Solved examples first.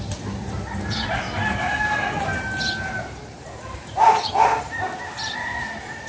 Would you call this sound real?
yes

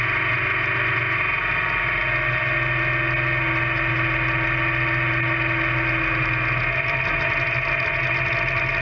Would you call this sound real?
yes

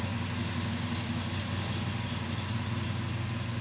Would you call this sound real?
yes